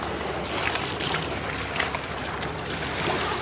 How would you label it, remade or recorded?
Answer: recorded